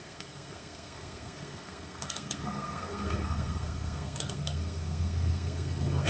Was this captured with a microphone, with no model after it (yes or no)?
no